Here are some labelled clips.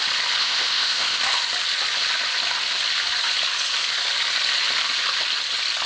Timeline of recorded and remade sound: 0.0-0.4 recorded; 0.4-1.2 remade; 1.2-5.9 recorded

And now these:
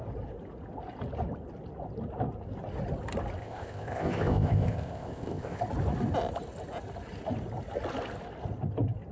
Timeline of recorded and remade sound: 0.0-3.4 recorded; 3.4-5.6 remade; 5.6-9.1 recorded

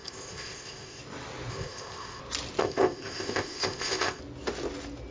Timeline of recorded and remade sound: 0.0-1.0 remade; 1.0-1.5 recorded; 1.5-2.2 remade; 2.2-2.6 recorded; 2.6-4.2 remade; 4.2-5.1 recorded

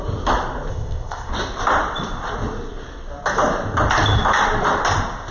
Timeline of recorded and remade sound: 0.0-0.7 recorded; 0.7-1.3 remade; 1.3-5.3 recorded

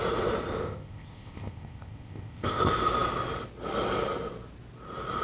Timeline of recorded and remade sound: 0.0-0.5 recorded; 0.5-2.6 remade; 2.6-5.2 recorded

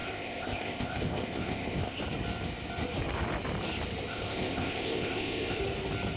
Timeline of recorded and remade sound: 0.0-2.0 remade; 2.0-4.1 recorded; 4.1-5.6 remade; 5.6-6.2 recorded